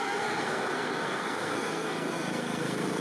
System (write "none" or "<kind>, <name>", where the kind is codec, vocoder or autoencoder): codec, SNAC